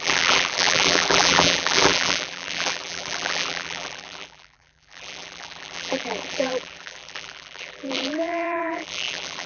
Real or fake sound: fake